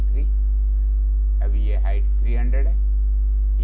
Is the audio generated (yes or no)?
no